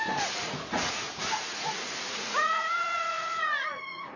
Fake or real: fake